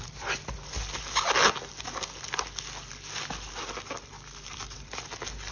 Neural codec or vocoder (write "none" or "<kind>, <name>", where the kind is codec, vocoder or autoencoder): none